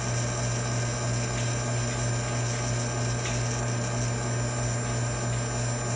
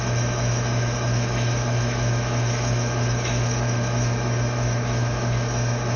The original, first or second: first